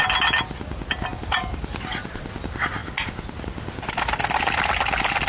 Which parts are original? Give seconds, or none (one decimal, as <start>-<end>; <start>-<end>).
0.0-5.3